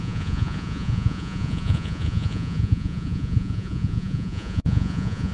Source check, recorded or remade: remade